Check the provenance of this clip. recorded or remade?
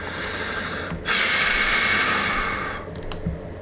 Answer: recorded